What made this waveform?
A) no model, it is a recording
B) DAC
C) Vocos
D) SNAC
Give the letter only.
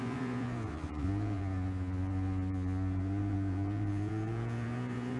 C